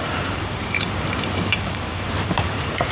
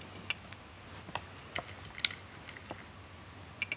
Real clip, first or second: second